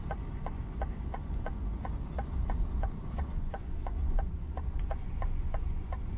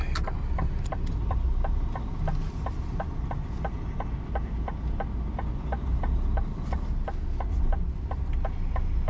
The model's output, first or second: first